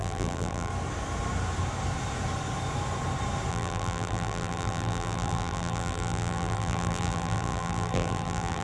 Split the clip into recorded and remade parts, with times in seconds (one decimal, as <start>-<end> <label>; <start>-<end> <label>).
0.0-0.7 remade; 0.7-3.5 recorded; 3.5-8.6 remade